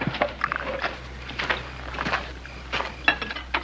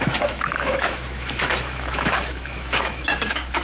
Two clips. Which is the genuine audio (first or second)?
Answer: first